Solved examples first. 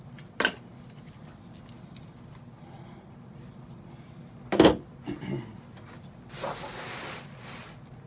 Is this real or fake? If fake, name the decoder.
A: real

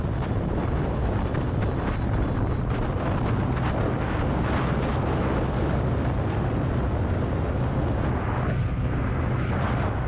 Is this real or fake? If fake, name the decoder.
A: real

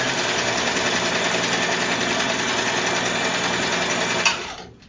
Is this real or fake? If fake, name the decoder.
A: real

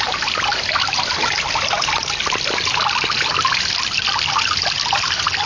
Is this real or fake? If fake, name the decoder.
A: real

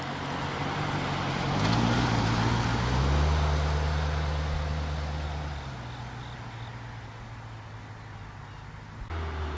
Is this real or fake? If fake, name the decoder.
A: real